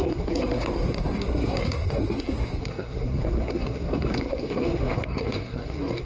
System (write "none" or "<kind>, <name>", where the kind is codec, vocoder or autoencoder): codec, SNAC